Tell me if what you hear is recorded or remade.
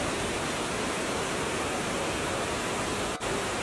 recorded